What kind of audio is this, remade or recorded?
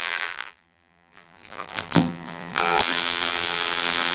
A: remade